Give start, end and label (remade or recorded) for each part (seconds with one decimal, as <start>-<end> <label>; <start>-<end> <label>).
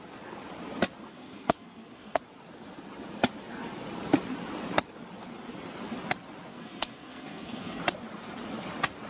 0.0-1.1 recorded; 1.1-2.2 remade; 2.2-6.5 recorded; 6.5-7.8 remade; 7.8-9.1 recorded